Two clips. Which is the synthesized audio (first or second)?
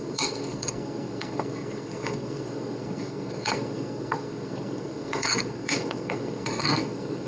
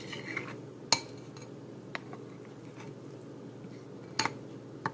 first